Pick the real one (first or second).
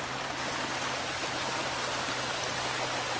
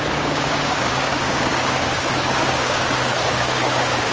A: first